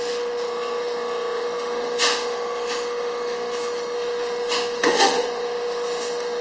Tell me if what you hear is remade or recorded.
remade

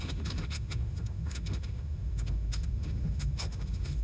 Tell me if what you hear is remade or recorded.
remade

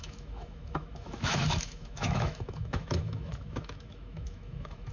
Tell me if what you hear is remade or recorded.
remade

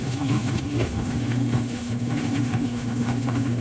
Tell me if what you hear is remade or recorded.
remade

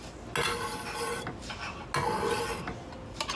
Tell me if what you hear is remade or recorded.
recorded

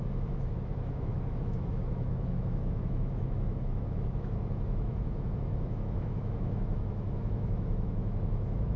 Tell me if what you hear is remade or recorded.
remade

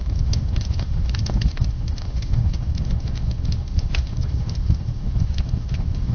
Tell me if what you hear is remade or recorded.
remade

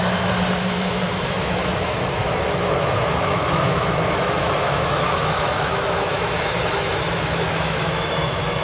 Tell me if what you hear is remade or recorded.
remade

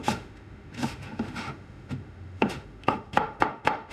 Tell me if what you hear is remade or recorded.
remade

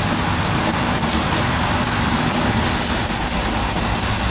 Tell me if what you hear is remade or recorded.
recorded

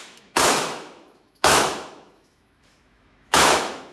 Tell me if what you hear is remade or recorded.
remade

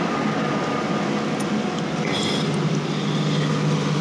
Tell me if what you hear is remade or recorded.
recorded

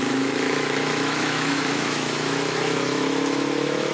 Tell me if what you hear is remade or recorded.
remade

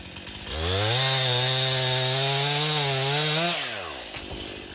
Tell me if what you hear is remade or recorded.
recorded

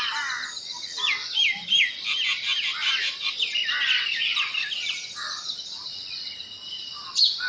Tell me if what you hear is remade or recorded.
recorded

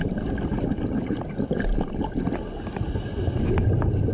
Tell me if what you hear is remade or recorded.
recorded